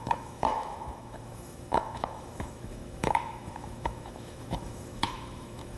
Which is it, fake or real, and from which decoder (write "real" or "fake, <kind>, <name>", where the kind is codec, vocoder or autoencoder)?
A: fake, autoencoder, DAC-VAE